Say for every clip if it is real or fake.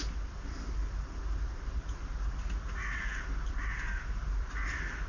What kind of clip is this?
real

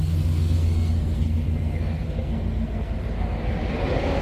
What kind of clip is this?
fake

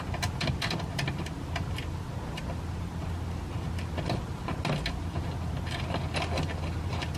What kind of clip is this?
real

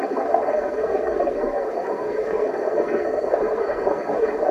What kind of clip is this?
fake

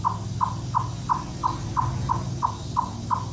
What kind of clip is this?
real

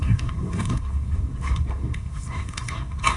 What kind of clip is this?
fake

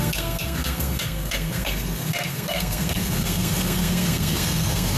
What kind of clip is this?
fake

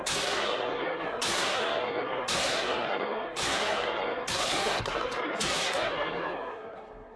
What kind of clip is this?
fake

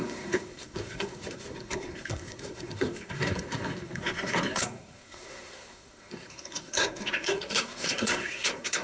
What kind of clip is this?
fake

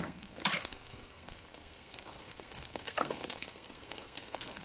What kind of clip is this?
fake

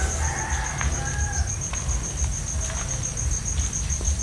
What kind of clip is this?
real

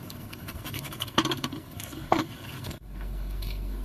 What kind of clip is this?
fake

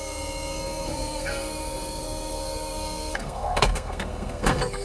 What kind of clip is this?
fake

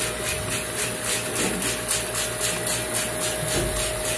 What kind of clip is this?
real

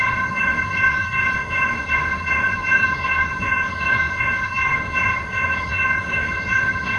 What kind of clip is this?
fake